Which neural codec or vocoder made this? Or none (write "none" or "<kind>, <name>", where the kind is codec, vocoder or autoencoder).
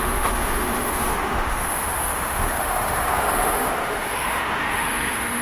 autoencoder, DAC-VAE